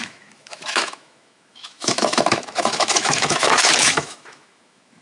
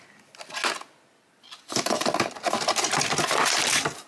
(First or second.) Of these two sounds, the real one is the second